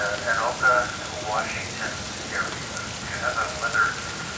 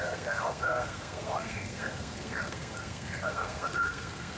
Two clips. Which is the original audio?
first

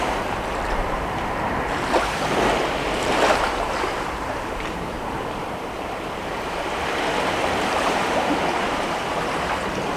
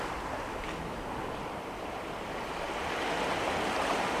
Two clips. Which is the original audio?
second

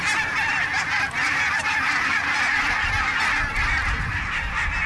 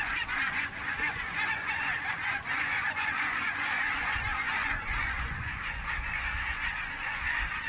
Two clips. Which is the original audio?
first